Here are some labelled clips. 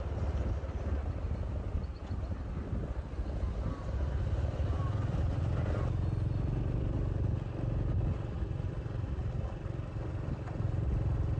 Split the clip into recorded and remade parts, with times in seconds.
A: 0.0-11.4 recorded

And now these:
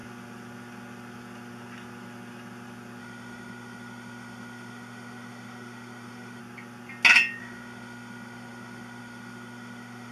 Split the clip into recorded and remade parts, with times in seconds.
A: 0.0-3.0 recorded; 3.0-6.4 remade; 6.4-7.4 recorded; 7.4-10.1 remade

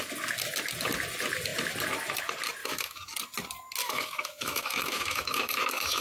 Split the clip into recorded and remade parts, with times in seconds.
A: 0.0-2.6 recorded; 2.6-3.1 remade; 3.1-3.8 recorded; 3.8-6.0 remade

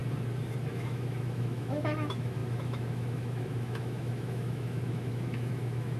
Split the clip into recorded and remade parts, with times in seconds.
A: 0.0-0.7 recorded; 0.7-6.0 remade

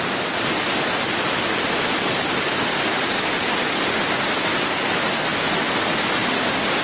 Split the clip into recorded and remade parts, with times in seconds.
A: 0.0-6.8 recorded

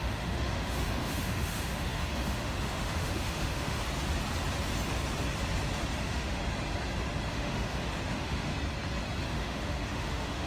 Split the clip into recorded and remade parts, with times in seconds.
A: 0.0-3.8 remade; 3.8-6.0 recorded; 6.0-6.4 remade; 6.4-7.3 recorded; 7.3-8.5 remade; 8.5-9.2 recorded; 9.2-10.5 remade